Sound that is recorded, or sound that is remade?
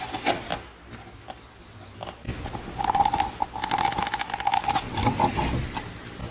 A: recorded